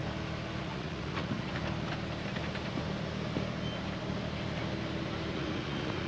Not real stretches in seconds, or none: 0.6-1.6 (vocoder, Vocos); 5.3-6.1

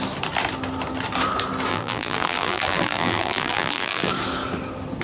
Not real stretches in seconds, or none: 1.7-4.1 (vocoder, BigVGAN v2)

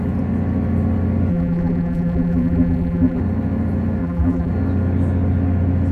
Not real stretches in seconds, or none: 1.3-3.2 (vocoder, BigVGAN v2); 4.0-4.5

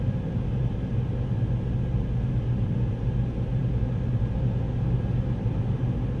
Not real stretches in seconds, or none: none

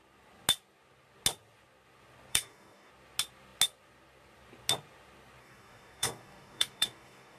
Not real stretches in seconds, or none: 2.3-2.9 (codec, DAC); 5.4-7.4